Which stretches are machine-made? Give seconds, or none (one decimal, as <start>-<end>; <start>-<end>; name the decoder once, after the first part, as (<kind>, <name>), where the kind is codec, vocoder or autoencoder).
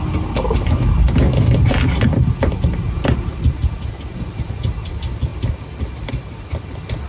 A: none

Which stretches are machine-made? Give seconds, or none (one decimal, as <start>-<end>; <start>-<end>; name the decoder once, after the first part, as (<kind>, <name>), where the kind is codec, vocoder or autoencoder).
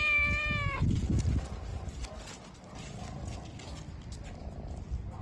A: none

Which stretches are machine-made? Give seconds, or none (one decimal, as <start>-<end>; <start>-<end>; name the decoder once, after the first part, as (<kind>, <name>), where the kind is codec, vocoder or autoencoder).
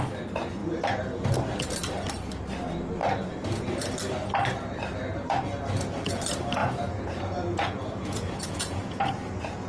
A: 6.6-9.7 (vocoder, Vocos)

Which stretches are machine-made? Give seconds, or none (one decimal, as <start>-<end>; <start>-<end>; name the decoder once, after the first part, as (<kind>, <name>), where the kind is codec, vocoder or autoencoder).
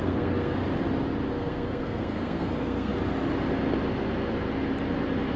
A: 0.0-0.6 (codec, SNAC); 1.3-2.9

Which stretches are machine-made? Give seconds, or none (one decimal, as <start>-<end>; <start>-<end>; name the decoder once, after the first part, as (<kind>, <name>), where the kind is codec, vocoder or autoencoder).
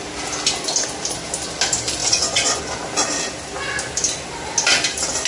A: 2.0-2.6 (vocoder, Vocos)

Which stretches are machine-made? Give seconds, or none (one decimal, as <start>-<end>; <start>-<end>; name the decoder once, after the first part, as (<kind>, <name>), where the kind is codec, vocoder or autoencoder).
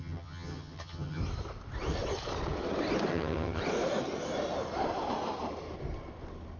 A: 0.0-1.2 (vocoder, HiFi-GAN); 3.1-3.6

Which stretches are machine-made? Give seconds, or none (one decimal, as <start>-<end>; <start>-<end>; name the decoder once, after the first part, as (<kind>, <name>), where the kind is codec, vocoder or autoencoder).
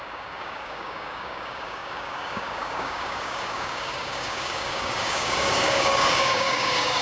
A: 0.0-7.0 (codec, DAC)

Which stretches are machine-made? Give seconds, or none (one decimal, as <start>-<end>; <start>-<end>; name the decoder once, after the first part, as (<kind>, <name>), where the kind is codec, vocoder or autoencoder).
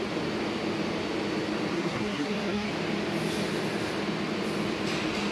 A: 1.7-2.7 (codec, SNAC)